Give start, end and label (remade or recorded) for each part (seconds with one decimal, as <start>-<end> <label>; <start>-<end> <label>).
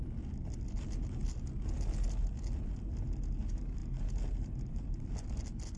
0.0-5.8 recorded